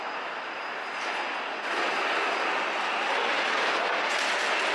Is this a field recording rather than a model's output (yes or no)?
yes